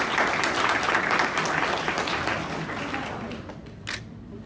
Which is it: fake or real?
real